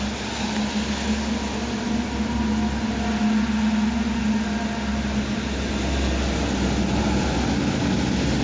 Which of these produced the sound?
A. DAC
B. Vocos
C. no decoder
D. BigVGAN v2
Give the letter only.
C